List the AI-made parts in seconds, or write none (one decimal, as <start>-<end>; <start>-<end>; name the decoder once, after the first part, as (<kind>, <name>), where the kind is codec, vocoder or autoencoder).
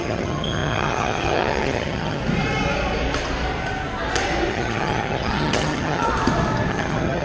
0.0-2.2 (vocoder, HiFi-GAN); 4.5-6.1; 6.7-7.2